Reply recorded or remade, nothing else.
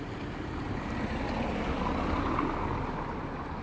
recorded